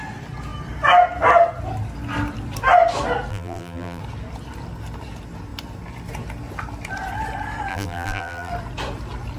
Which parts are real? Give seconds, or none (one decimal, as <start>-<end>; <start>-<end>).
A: 0.0-3.3; 4.0-7.7; 8.5-9.4

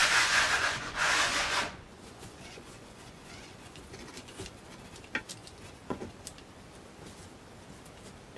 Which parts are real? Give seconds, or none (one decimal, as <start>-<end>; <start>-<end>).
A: 4.7-5.4; 6.0-8.4

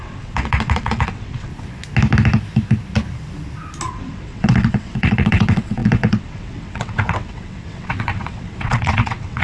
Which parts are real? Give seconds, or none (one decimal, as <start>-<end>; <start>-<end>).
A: 1.5-3.9